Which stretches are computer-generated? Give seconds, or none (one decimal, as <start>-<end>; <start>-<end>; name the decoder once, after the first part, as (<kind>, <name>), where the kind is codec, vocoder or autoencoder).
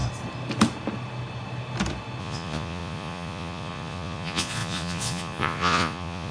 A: 2.2-6.3 (vocoder, Vocos)